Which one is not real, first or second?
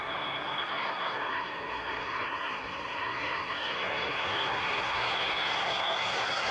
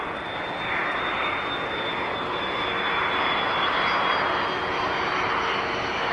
first